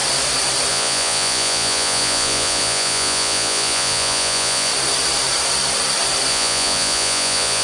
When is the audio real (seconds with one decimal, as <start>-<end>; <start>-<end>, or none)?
0.0-0.7; 4.7-6.3